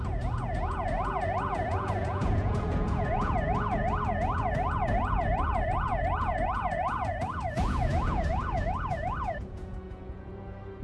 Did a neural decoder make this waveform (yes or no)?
yes